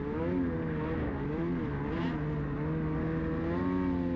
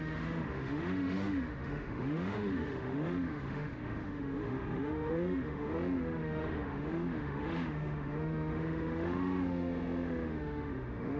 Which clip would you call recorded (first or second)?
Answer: first